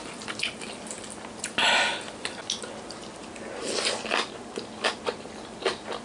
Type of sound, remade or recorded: recorded